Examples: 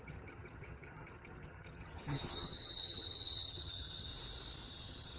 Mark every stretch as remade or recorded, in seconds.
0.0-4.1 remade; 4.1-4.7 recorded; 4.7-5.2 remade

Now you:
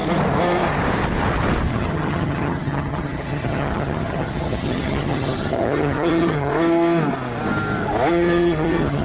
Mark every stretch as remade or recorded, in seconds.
0.0-1.7 recorded; 1.7-6.5 remade; 6.5-8.1 recorded; 8.1-9.0 remade

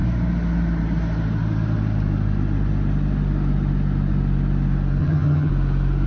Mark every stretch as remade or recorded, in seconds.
0.0-5.0 recorded; 5.0-5.5 remade; 5.5-6.1 recorded

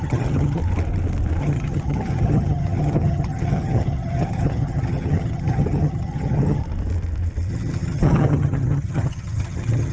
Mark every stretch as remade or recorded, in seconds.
0.0-0.6 remade; 0.6-1.4 recorded; 1.4-6.6 remade; 6.6-7.5 recorded; 7.5-9.9 remade